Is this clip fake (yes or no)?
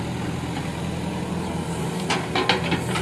no